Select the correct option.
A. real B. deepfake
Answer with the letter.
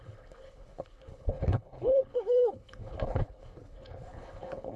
B